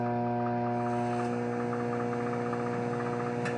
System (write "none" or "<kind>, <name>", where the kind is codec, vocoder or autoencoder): none